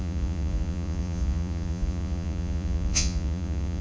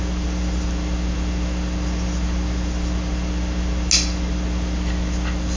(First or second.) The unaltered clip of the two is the second